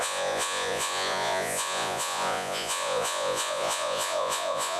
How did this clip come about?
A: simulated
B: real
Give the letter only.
A